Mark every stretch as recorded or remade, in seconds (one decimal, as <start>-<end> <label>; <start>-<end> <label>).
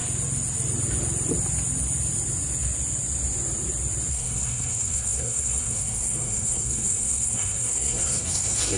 0.0-4.1 recorded; 4.1-8.8 remade